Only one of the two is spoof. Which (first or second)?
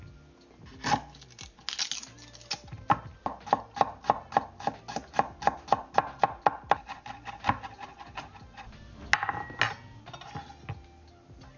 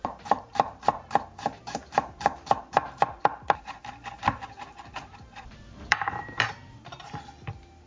second